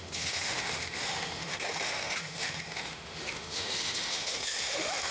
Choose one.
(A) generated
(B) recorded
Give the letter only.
A